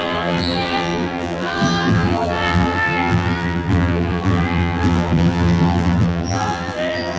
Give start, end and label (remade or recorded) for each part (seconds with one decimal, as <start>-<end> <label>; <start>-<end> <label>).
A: 0.0-7.2 remade